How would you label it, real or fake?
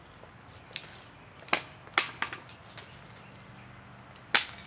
real